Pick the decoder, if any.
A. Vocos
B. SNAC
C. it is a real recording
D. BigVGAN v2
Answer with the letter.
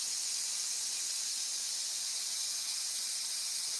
A